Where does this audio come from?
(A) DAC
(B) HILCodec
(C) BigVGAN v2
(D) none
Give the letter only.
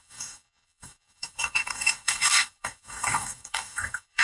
A